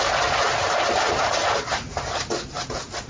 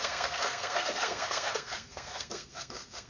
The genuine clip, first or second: first